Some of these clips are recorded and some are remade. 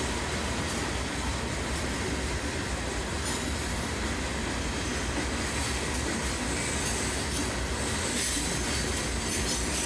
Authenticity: recorded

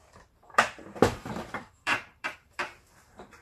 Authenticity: remade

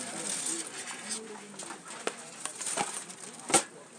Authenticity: recorded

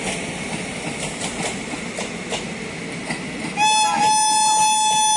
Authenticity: recorded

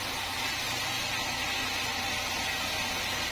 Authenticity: recorded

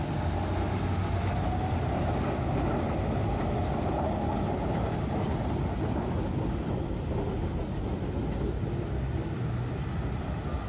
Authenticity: recorded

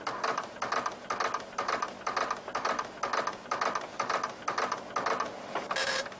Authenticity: recorded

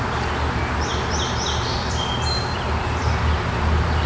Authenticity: remade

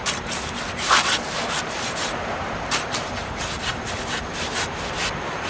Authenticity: remade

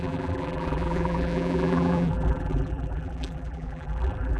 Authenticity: remade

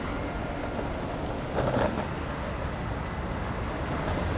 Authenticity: recorded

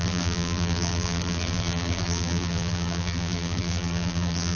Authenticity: remade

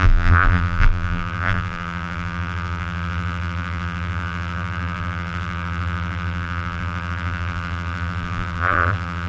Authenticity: remade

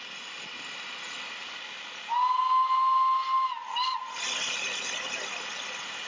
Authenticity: recorded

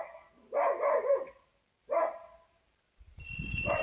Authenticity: recorded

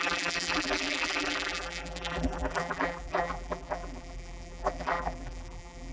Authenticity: remade